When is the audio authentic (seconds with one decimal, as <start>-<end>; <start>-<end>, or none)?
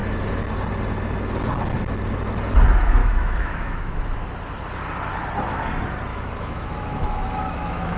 0.0-3.0; 4.0-6.1